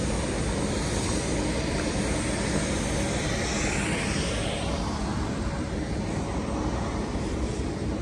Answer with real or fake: real